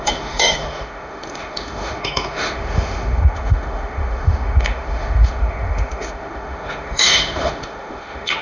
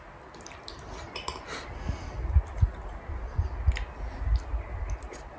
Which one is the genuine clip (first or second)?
second